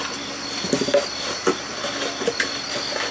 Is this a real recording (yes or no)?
yes